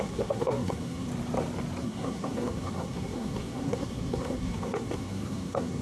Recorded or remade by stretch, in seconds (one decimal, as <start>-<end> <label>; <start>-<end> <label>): 0.0-1.1 remade; 1.1-1.8 recorded; 1.8-5.8 remade

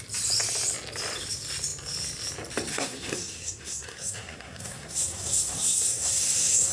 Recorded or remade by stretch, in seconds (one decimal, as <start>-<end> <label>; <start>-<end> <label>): 0.0-2.7 recorded; 2.7-6.7 remade

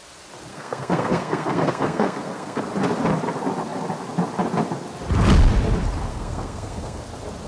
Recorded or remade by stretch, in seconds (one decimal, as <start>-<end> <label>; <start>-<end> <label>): 0.0-0.5 recorded; 0.5-2.6 remade; 2.6-6.1 recorded; 6.1-7.0 remade; 7.0-7.5 recorded

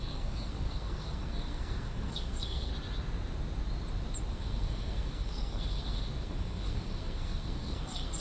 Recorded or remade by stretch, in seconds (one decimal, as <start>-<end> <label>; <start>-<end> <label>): 0.0-2.7 remade; 2.7-4.3 recorded; 4.3-8.2 remade

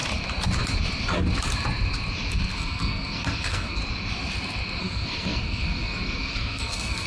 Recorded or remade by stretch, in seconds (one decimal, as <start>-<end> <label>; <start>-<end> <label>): 0.0-2.3 recorded; 2.3-3.8 remade; 3.8-4.8 recorded; 4.8-7.1 remade

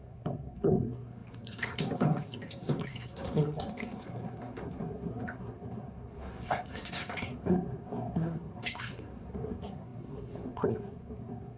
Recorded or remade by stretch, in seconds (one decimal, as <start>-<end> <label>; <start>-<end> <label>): 0.0-11.6 remade

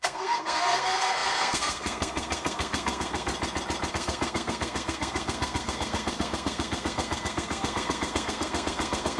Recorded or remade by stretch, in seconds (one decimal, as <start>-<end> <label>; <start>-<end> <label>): 0.0-3.3 remade; 3.3-3.9 recorded; 3.9-9.2 remade

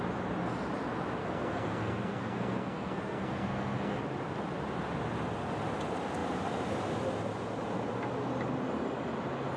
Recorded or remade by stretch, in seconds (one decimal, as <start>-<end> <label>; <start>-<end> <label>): 0.0-1.2 recorded; 1.2-4.0 remade; 4.0-9.6 recorded